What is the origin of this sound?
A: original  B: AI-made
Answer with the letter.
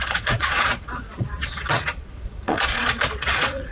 B